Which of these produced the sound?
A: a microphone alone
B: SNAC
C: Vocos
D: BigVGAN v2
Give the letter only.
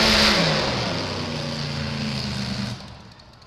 A